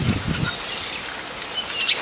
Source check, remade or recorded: recorded